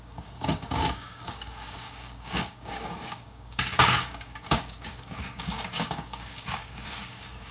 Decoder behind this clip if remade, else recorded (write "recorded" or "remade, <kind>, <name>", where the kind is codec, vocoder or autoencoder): remade, codec, DAC